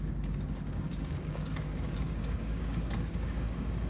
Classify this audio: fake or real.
fake